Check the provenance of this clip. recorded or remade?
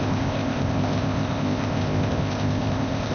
remade